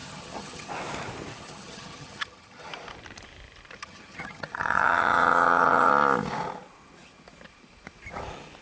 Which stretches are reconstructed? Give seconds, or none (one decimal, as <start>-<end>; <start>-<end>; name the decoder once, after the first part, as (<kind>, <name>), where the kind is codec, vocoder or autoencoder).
0.0-0.7 (vocoder, HiFi-GAN); 1.3-2.7; 3.8-5.9